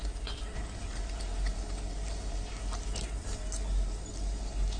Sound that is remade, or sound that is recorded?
recorded